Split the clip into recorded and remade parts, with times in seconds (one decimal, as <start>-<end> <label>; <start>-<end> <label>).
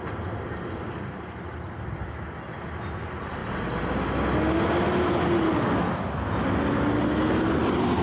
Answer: 0.0-8.0 recorded